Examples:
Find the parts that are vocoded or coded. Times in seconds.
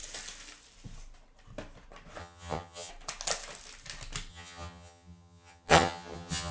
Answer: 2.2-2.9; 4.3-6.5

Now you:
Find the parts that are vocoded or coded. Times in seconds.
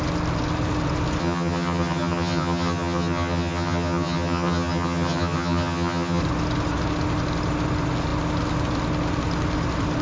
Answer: 1.2-6.2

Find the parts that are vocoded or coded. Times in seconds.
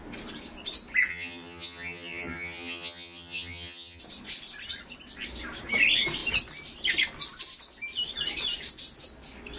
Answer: 1.1-4.0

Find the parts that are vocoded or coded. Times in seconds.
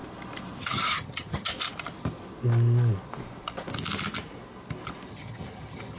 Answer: 0.6-1.5; 5.1-6.0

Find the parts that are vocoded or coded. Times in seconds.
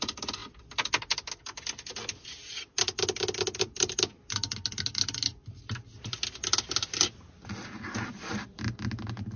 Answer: none